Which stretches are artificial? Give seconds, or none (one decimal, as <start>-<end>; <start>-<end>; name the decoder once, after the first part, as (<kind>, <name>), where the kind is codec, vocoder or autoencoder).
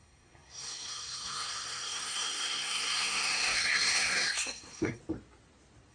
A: 0.0-5.0 (codec, SNAC)